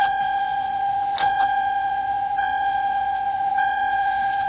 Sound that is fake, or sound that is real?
fake